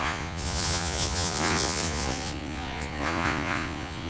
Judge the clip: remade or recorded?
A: remade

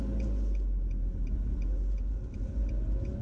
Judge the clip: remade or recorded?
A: recorded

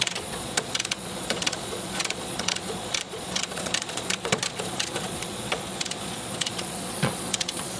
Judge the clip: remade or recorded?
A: remade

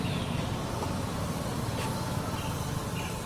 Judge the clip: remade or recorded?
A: recorded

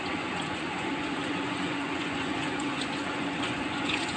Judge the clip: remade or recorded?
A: remade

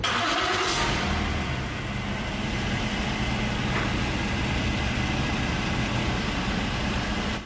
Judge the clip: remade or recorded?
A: recorded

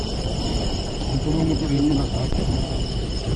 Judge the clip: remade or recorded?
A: remade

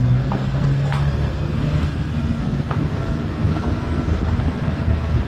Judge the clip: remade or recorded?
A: remade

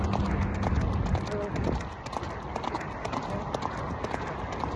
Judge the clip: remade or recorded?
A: recorded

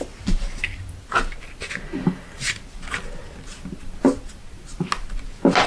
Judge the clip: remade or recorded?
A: recorded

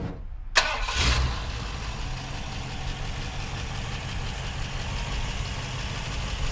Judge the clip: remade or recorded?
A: recorded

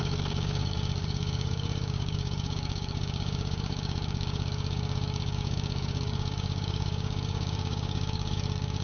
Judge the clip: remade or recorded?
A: remade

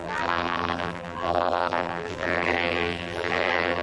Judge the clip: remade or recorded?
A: remade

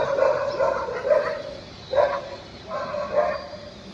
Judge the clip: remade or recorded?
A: recorded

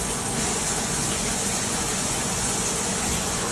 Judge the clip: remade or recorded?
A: remade